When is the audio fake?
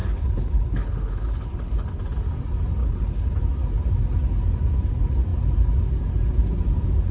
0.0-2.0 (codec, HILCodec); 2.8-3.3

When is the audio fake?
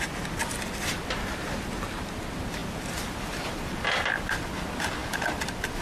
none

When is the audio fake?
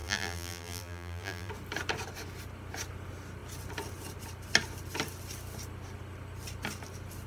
0.0-1.5 (vocoder, BigVGAN v2)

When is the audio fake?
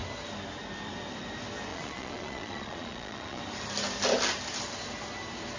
1.7-3.4 (vocoder, Vocos)